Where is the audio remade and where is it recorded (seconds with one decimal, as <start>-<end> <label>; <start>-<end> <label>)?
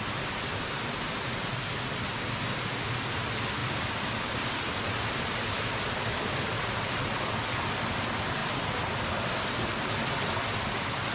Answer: 0.0-3.6 recorded; 3.6-6.0 remade; 6.0-8.4 recorded; 8.4-9.1 remade; 9.1-11.1 recorded